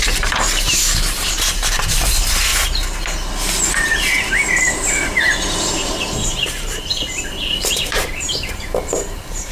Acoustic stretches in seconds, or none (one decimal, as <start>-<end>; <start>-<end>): 2.5-3.7